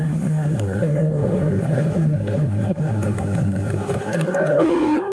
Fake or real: fake